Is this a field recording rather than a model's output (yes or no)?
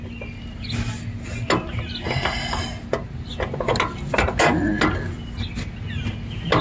yes